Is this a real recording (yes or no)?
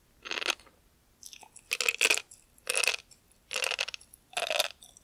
yes